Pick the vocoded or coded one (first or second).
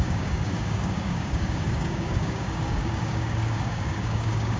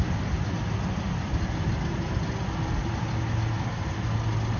first